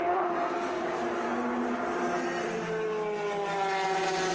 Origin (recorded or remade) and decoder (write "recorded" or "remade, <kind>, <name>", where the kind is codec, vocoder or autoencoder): recorded